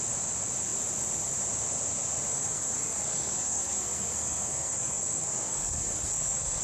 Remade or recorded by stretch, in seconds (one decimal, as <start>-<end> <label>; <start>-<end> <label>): 0.0-2.3 recorded; 2.3-6.6 remade

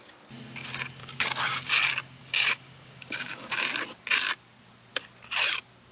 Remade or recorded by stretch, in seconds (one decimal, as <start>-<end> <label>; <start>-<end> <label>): 0.0-1.0 recorded; 1.0-1.7 remade; 1.7-2.2 recorded; 2.2-3.5 remade; 3.5-5.9 recorded

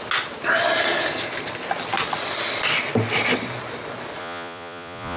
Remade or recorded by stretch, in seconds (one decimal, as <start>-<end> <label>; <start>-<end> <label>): 0.0-4.2 recorded; 4.2-5.2 remade